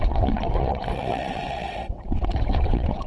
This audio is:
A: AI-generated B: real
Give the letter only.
A